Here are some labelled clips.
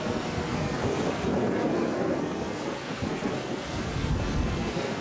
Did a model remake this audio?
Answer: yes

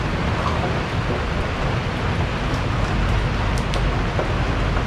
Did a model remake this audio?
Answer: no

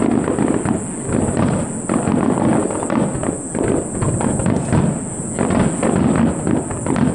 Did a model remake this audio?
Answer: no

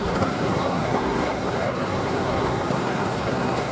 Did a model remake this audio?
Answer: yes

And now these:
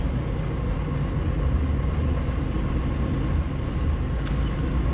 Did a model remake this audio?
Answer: no